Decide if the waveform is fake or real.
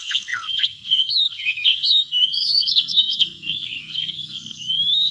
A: fake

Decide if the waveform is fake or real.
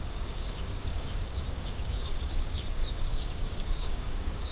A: fake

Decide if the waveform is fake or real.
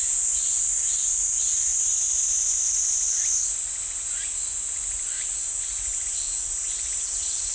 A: real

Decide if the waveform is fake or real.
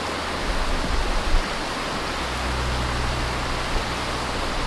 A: real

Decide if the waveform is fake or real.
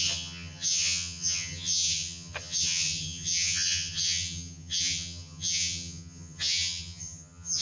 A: fake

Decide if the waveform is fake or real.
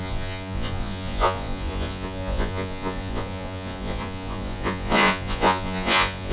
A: fake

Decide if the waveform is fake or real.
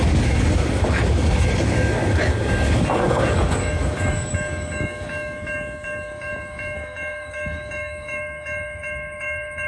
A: fake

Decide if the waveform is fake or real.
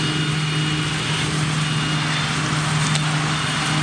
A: real